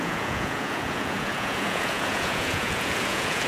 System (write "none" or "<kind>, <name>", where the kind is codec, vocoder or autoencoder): vocoder, Vocos